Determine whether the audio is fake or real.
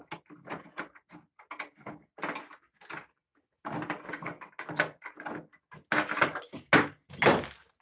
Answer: real